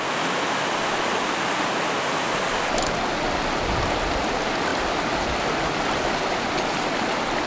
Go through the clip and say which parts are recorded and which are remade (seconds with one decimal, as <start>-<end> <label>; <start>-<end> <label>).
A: 0.0-4.7 recorded; 4.7-6.4 remade; 6.4-7.5 recorded